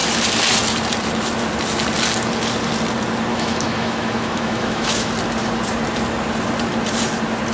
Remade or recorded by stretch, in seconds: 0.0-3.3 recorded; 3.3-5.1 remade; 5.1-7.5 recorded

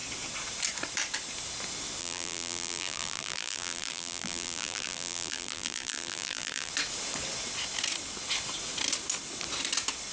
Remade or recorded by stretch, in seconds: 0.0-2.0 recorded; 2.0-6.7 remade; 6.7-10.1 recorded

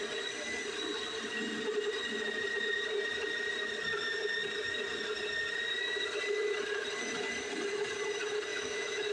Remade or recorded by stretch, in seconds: 0.0-8.5 recorded; 8.5-9.1 remade